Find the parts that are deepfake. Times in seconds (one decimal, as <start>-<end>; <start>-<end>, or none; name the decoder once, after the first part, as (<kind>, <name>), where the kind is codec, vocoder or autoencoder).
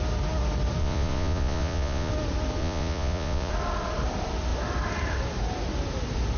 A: 0.8-2.1 (vocoder, Vocos); 2.6-3.5